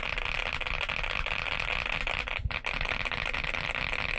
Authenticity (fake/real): real